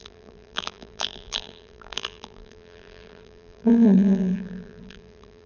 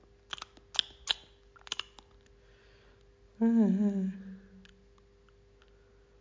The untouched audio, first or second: second